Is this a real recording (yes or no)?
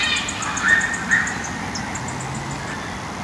yes